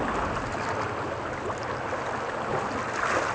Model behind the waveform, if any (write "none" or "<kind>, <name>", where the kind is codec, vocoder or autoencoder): none